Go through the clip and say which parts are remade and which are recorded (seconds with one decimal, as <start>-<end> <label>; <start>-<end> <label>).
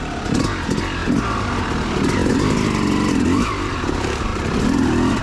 0.0-5.2 recorded